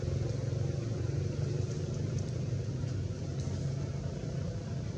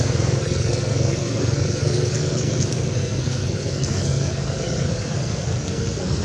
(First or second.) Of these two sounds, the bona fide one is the first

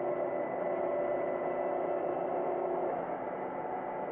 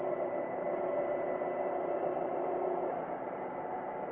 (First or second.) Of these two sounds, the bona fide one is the first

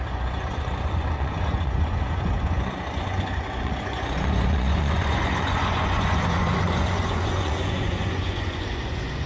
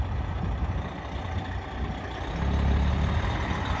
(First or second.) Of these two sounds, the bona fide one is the second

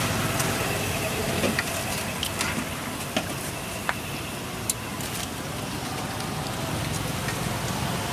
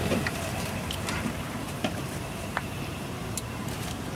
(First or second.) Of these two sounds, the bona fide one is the first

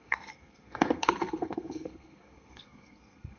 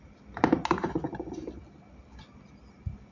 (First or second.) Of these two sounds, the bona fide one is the second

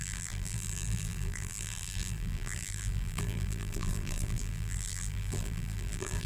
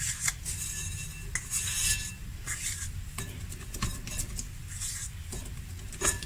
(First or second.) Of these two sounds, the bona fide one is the second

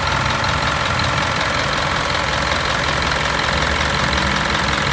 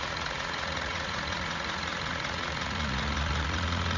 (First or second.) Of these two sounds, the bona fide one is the first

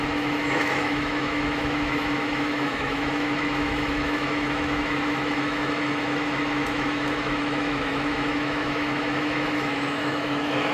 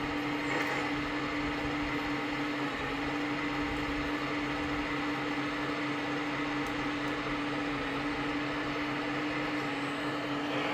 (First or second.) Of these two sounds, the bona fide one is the second